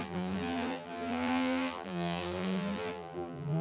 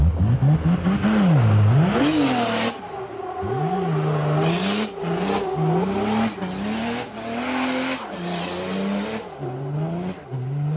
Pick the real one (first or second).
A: second